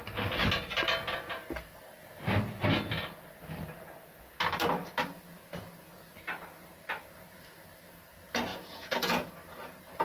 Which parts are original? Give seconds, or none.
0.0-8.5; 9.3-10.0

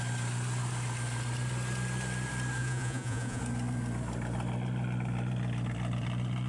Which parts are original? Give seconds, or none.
0.0-2.6; 3.4-6.5

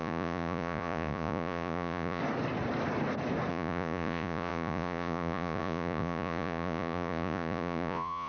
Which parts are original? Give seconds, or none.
2.2-3.5